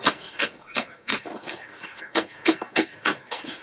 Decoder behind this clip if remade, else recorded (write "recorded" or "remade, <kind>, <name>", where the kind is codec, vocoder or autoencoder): remade, codec, SNAC